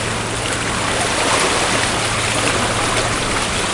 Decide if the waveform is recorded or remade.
recorded